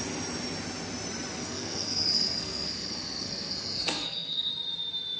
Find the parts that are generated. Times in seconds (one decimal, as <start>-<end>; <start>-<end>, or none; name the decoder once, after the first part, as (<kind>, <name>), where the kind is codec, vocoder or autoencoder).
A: 1.4-4.5 (codec, SNAC)